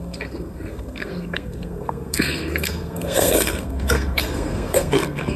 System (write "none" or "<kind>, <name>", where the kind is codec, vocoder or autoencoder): codec, SNAC